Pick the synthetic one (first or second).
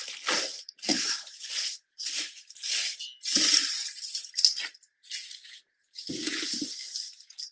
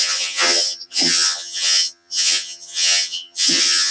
second